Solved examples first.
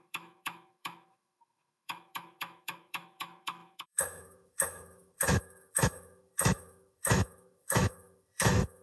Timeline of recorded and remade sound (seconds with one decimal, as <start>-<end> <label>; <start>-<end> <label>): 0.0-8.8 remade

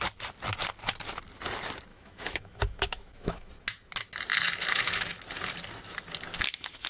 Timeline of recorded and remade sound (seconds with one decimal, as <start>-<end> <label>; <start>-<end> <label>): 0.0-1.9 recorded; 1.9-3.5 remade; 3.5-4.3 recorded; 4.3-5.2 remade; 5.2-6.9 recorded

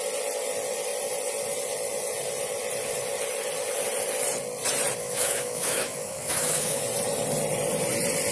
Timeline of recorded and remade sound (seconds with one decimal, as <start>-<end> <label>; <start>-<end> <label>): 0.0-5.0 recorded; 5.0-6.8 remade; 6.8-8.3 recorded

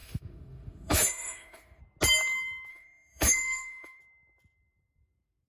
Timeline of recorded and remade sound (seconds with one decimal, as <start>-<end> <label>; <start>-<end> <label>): 0.0-1.8 remade; 1.8-2.7 recorded; 2.7-4.0 remade; 4.0-5.5 recorded

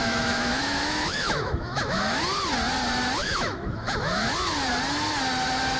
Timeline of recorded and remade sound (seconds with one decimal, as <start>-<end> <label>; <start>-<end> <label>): 0.0-2.2 remade; 2.2-3.2 recorded; 3.2-4.3 remade; 4.3-5.8 recorded

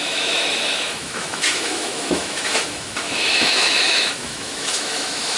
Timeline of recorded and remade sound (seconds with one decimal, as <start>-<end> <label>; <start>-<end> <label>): 0.0-5.4 remade

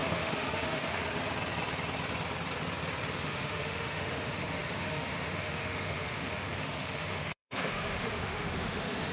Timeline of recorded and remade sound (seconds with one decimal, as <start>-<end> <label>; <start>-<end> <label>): 0.0-1.0 remade; 1.0-3.2 recorded; 3.2-9.1 remade